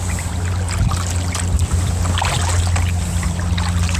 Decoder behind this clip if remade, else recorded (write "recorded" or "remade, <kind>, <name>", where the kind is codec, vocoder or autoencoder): recorded